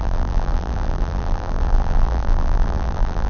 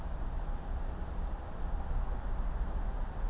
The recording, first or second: second